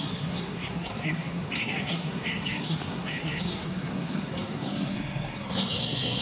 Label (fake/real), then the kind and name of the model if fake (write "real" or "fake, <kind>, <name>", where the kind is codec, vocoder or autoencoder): fake, codec, SNAC